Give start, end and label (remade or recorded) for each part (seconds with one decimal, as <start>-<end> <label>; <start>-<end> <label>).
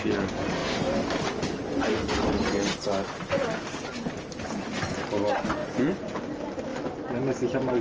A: 0.0-7.8 recorded